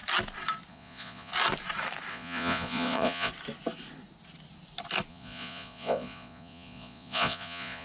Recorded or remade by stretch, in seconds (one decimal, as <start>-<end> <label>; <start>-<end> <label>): 0.0-0.7 recorded; 0.7-1.3 remade; 1.3-2.1 recorded; 2.1-3.3 remade; 3.3-5.1 recorded; 5.1-7.8 remade